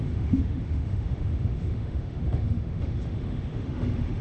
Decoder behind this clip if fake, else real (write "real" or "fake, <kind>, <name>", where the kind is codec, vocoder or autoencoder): fake, autoencoder, DAC-VAE